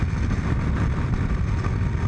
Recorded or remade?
recorded